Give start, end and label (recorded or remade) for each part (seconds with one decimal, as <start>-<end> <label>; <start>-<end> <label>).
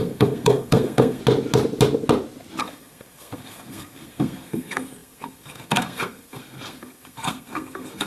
0.0-1.2 remade; 1.2-2.6 recorded; 2.6-8.1 remade